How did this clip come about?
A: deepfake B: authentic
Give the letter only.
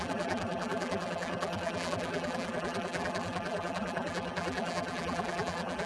A